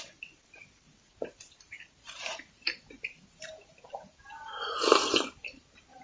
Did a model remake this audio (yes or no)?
yes